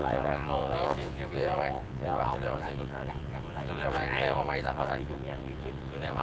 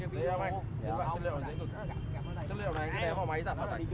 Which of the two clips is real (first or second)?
second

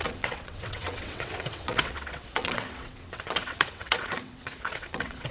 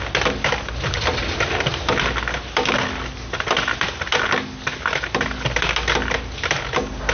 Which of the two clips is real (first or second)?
second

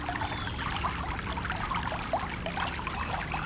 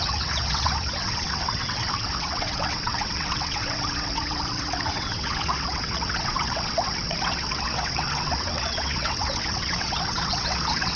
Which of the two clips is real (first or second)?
first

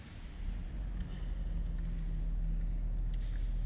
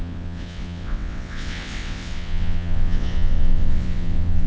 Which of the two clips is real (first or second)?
first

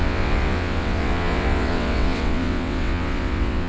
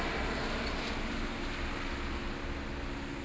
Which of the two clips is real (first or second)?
second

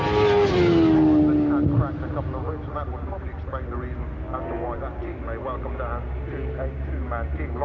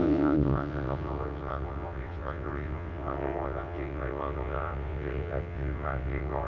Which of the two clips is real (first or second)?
first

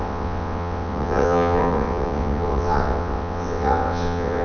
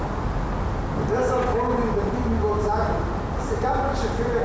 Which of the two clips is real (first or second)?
second